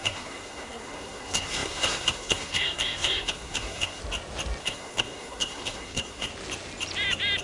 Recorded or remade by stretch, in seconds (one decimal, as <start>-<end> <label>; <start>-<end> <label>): 0.0-4.0 remade; 4.0-4.6 recorded; 4.6-6.3 remade; 6.3-7.4 recorded